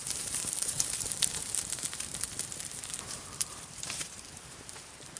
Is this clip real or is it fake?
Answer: fake